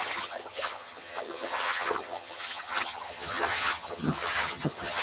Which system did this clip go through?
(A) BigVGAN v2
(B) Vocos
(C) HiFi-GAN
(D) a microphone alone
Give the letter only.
C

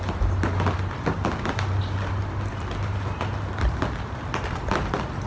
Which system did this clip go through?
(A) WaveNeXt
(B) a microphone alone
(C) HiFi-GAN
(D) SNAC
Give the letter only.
B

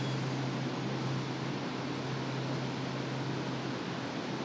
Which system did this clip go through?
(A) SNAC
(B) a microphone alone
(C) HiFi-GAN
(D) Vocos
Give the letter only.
B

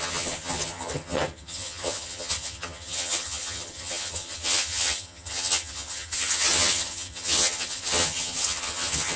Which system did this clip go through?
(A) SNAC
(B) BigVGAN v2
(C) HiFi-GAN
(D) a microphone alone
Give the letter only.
C